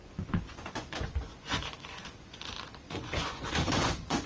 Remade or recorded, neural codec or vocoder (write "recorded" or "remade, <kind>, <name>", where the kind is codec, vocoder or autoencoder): remade, vocoder, Vocos